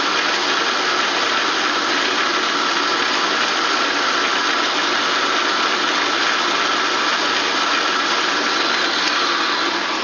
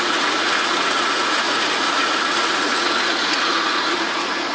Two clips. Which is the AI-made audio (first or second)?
second